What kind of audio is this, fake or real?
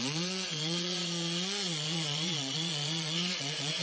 fake